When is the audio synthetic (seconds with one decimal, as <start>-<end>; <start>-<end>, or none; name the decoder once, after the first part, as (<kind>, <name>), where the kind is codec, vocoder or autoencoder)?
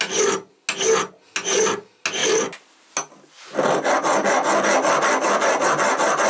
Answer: none